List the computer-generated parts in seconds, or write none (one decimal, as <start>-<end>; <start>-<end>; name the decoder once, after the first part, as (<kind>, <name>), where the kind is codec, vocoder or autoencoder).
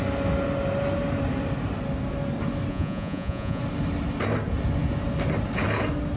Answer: 2.7-3.6 (vocoder, Vocos)